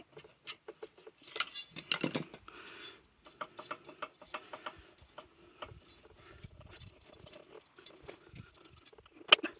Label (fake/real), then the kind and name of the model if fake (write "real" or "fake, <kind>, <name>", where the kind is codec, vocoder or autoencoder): real